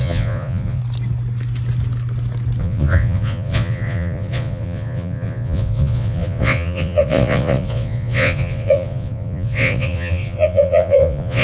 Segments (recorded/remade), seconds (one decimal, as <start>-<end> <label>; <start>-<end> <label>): 0.0-0.8 remade; 0.8-2.6 recorded; 2.6-11.4 remade